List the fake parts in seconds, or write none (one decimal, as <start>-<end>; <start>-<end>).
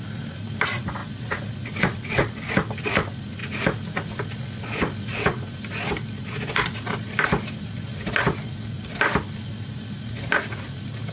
none